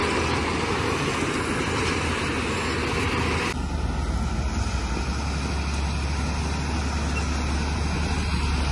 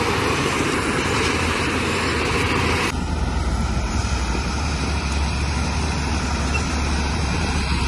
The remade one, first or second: second